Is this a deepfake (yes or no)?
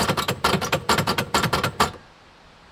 yes